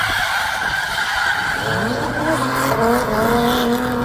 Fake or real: real